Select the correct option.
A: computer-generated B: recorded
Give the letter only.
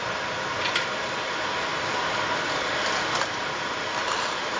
B